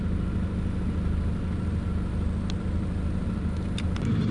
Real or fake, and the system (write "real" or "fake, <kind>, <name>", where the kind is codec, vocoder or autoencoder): real